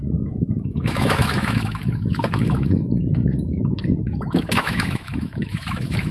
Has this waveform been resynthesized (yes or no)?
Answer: yes